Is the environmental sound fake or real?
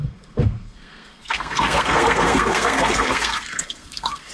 fake